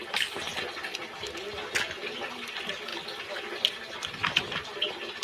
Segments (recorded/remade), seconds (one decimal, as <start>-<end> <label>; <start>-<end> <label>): 0.0-5.2 recorded